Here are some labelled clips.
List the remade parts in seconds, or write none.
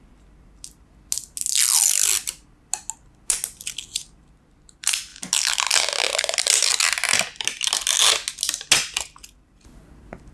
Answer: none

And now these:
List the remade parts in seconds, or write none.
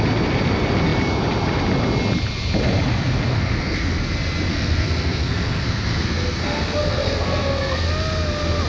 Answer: 3.3-4.0; 4.5-7.9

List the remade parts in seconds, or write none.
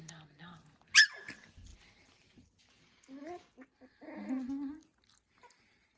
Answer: none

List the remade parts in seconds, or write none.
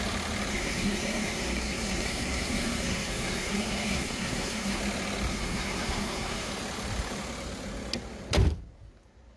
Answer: 0.5-4.8; 5.3-6.5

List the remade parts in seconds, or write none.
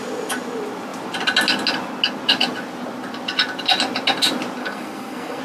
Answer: 4.6-5.4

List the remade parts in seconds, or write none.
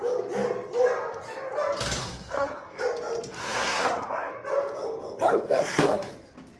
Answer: 2.0-2.8; 3.4-4.3; 5.3-6.1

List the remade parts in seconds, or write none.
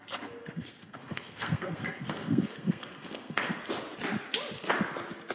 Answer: 0.4-3.6